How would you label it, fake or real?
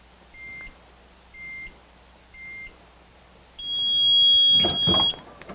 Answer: real